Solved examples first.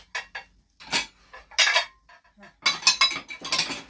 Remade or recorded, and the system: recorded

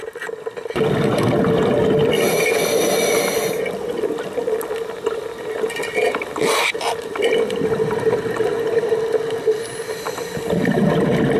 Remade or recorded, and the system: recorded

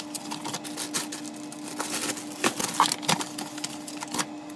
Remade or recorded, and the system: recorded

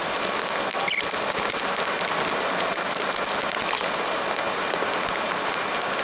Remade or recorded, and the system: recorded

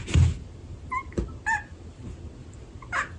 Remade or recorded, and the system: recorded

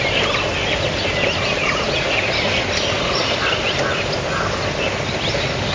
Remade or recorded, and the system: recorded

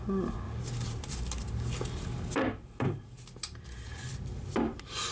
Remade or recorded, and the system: recorded